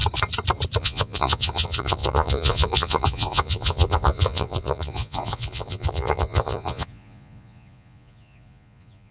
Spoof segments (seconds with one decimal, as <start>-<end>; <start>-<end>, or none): 0.8-9.1